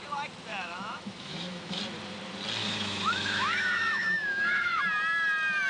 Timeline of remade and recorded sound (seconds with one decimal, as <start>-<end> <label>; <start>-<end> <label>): 0.0-0.5 recorded; 0.5-1.8 remade; 1.8-2.6 recorded; 2.6-4.8 remade; 4.8-5.7 recorded